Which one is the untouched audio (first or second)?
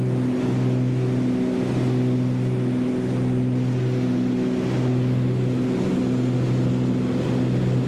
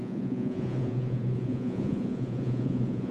first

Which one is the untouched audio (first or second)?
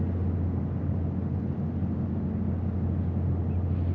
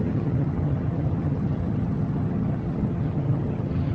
first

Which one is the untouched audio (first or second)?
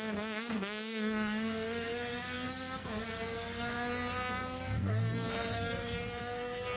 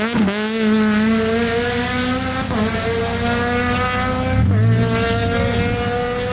second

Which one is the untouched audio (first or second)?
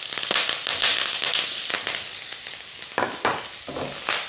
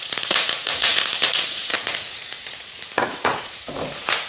first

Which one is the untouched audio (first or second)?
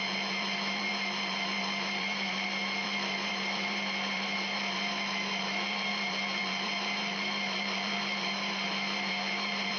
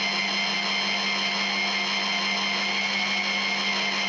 second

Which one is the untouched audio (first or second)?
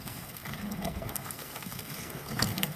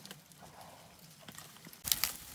second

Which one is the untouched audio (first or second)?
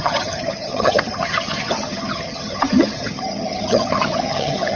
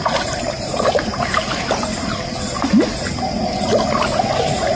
second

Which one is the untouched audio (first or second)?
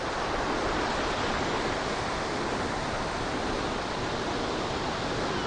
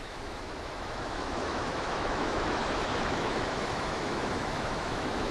first